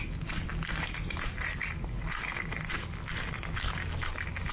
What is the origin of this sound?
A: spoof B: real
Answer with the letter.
B